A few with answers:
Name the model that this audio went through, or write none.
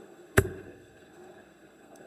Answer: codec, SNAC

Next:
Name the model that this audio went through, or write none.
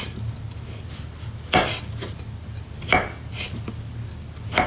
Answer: none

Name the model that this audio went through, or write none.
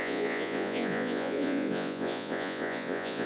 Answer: vocoder, Vocos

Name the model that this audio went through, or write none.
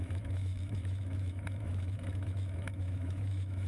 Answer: autoencoder, DAC-VAE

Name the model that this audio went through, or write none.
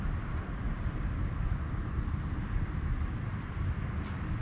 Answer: none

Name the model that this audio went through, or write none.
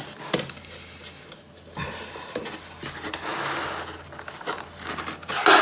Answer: none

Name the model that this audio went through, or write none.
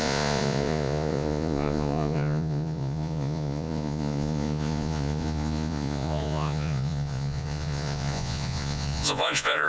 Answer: vocoder, Vocos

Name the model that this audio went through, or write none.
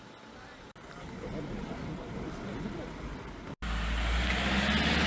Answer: none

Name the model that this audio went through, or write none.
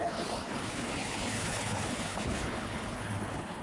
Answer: codec, HILCodec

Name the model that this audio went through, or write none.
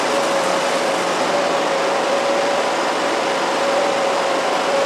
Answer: vocoder, BigVGAN v2